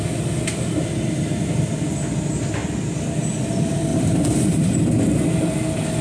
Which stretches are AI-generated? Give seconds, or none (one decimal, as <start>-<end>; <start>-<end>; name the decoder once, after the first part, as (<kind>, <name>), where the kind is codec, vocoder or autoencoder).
none

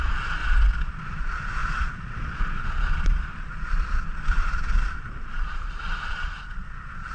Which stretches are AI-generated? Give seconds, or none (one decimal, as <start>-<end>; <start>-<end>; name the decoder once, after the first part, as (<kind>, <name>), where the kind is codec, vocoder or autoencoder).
0.0-0.4 (vocoder, Vocos); 0.9-7.1